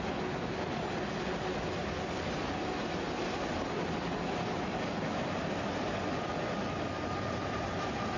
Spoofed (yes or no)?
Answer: no